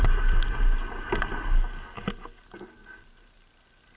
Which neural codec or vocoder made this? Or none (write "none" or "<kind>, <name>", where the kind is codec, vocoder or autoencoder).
none